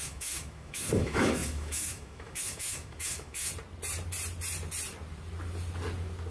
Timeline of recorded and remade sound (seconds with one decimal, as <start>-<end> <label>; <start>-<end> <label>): 0.0-3.5 remade; 3.5-6.3 recorded